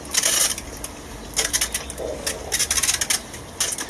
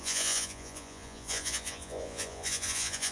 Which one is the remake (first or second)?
second